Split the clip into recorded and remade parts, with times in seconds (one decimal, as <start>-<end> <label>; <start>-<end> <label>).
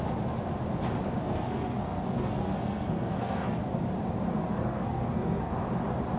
0.0-1.2 recorded; 1.2-3.6 remade; 3.6-4.4 recorded; 4.4-5.5 remade; 5.5-6.2 recorded